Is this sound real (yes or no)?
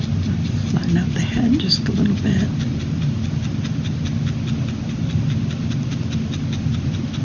yes